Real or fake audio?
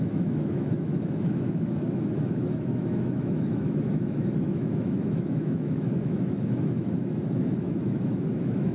fake